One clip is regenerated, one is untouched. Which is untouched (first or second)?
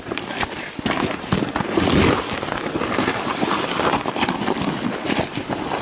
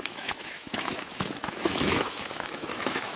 first